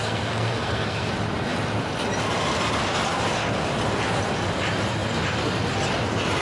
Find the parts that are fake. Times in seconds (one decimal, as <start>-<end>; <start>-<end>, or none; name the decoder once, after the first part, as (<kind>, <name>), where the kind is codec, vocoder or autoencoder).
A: 0.0-1.1 (codec, SNAC)